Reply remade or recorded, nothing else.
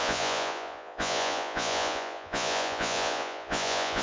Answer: remade